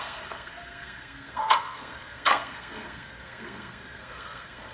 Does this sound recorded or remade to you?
remade